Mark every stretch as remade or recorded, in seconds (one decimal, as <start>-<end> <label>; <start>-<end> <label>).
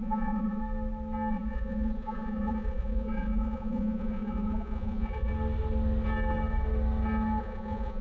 0.0-0.6 remade; 0.6-1.3 recorded; 1.3-5.3 remade; 5.3-7.4 recorded; 7.4-8.0 remade